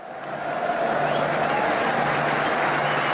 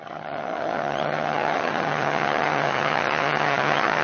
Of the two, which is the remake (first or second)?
second